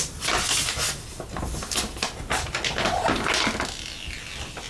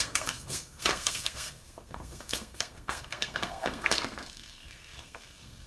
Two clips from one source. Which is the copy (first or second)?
second